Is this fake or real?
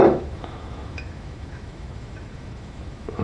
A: fake